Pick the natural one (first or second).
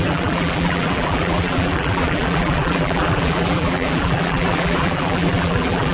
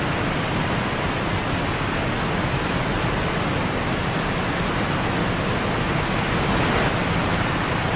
second